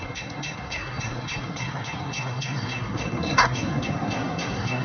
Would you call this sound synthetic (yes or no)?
yes